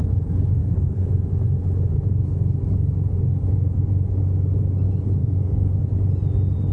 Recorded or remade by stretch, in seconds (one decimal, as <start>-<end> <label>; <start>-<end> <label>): 0.0-0.6 recorded; 0.6-1.1 remade; 1.1-5.2 recorded; 5.2-5.8 remade; 5.8-6.7 recorded